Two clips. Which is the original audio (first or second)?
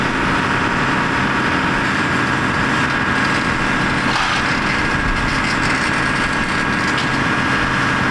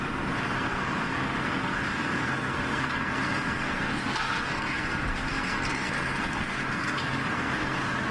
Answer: first